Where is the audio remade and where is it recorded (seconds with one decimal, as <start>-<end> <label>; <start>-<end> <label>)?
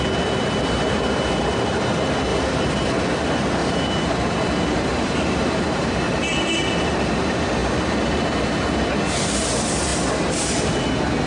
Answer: 0.0-2.3 recorded; 2.3-3.1 remade; 3.1-3.6 recorded; 3.6-5.9 remade; 5.9-11.3 recorded